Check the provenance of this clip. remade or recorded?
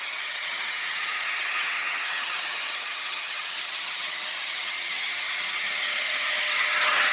remade